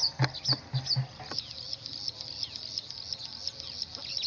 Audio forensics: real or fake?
real